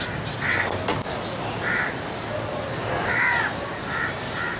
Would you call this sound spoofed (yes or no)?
no